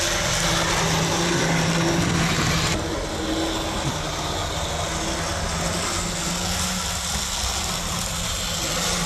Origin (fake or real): real